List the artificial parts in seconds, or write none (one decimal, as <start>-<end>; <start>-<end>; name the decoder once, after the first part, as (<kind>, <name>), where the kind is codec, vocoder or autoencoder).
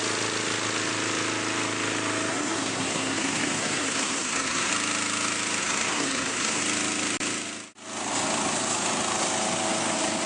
2.3-4.7 (codec, SNAC); 5.6-6.6